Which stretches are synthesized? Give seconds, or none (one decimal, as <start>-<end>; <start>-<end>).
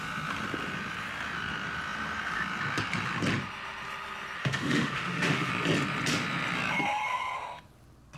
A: 4.4-5.5